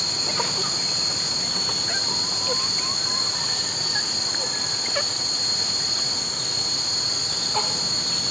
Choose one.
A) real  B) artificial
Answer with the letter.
A